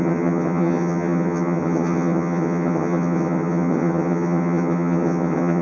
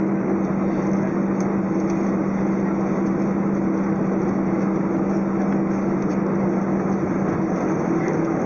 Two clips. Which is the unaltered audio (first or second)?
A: second